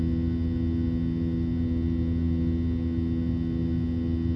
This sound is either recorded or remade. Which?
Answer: recorded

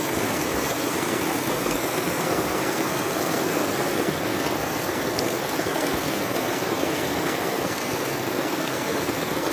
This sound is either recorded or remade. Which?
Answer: remade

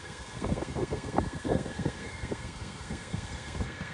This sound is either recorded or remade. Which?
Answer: remade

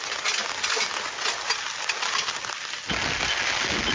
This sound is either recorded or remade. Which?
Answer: recorded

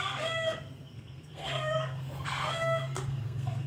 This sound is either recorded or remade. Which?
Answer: remade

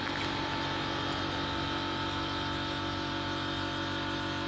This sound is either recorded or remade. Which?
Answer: recorded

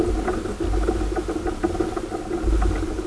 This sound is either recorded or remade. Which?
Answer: recorded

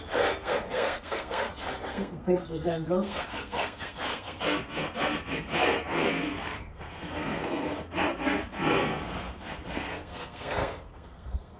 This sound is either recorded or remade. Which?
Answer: remade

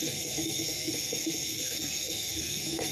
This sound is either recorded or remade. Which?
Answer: remade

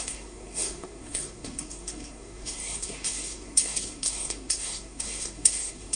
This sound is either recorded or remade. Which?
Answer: remade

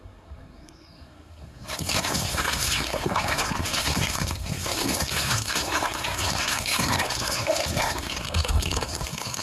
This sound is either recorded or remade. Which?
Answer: remade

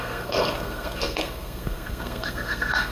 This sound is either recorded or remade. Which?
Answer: remade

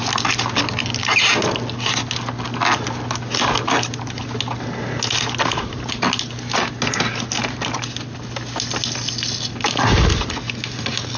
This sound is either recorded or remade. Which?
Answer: recorded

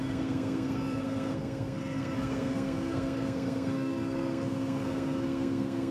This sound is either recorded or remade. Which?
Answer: remade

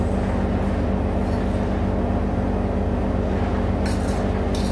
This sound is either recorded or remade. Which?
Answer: recorded